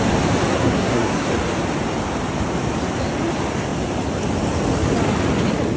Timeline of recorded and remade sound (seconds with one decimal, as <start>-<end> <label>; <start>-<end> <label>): 0.0-0.5 recorded; 0.5-1.3 remade; 1.3-5.8 recorded